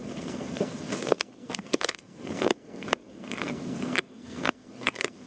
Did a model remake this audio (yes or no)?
yes